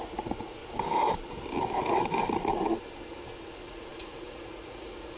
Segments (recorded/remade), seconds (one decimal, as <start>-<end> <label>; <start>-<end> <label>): 0.0-0.6 remade; 0.6-3.4 recorded; 3.4-5.2 remade